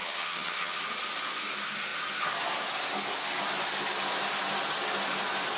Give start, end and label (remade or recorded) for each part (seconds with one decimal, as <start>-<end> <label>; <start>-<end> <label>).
0.0-0.8 remade; 0.8-5.6 recorded